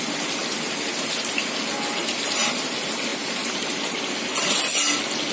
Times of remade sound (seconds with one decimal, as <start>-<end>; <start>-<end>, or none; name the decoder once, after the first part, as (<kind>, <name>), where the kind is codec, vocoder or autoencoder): 2.0-2.7 (vocoder, BigVGAN v2); 3.1-4.0